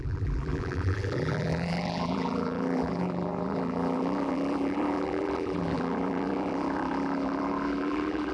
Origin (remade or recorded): remade